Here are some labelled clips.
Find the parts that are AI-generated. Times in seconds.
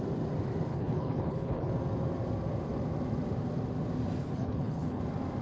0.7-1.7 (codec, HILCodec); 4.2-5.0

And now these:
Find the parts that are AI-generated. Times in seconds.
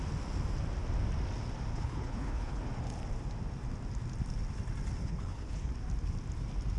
1.7-2.6 (codec, HILCodec); 5.0-5.7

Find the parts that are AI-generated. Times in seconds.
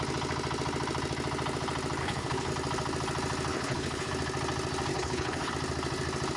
2.0-2.5 (codec, HILCodec); 3.5-4.1; 4.9-5.5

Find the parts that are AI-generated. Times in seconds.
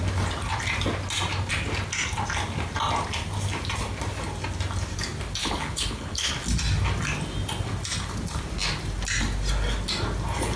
5.4-6.3 (codec, HILCodec)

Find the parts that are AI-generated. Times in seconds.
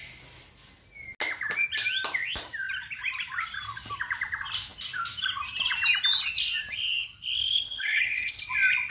7.4-8.4 (codec, HILCodec)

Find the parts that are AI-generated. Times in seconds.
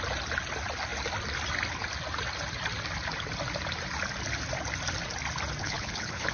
5.6-6.3 (codec, HILCodec)